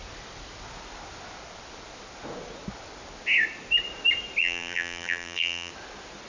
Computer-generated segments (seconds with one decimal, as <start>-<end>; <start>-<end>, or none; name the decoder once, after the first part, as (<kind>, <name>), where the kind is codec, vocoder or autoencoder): 4.4-5.7 (vocoder, BigVGAN v2)